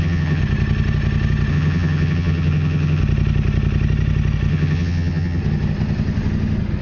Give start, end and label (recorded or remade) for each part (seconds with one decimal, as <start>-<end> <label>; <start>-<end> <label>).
0.0-0.4 remade; 0.4-1.5 recorded; 1.5-3.0 remade; 3.0-4.5 recorded; 4.5-5.4 remade; 5.4-6.8 recorded